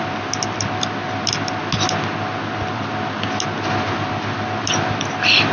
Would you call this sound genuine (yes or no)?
yes